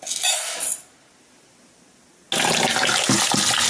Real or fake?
real